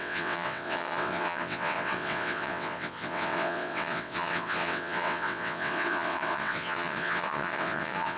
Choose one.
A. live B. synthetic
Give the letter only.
B